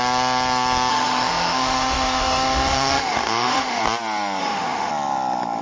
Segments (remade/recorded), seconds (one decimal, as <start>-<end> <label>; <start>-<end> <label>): 0.0-0.9 recorded; 0.9-3.8 remade; 3.8-4.4 recorded; 4.4-4.9 remade; 4.9-5.6 recorded